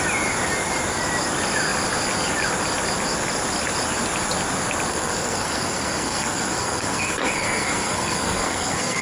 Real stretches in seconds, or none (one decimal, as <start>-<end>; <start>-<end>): 0.0-4.9